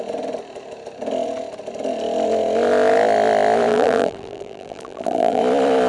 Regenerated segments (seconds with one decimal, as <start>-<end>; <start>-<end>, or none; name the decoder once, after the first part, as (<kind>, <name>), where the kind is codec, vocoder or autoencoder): 3.7-5.4 (vocoder, BigVGAN v2)